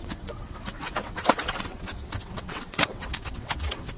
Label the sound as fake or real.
fake